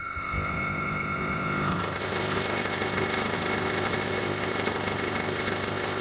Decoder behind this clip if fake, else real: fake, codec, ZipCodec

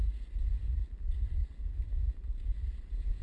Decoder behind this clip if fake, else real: real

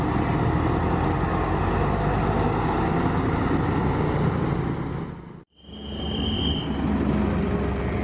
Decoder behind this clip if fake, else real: real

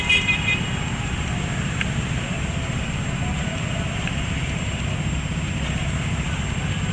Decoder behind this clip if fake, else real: fake, vocoder, BigVGAN v2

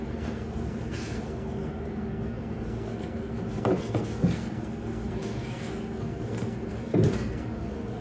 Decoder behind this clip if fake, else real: fake, codec, SNAC